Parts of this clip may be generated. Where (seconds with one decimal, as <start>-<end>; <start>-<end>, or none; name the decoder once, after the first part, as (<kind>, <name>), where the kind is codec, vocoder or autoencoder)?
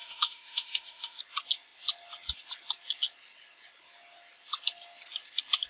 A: 0.0-1.2 (autoencoder, DAC-VAE)